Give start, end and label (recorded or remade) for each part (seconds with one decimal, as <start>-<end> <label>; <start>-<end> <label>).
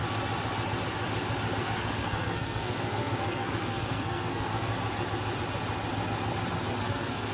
0.0-1.6 recorded; 1.6-4.7 remade; 4.7-6.8 recorded; 6.8-7.3 remade